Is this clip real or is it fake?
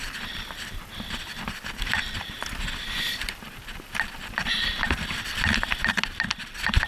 real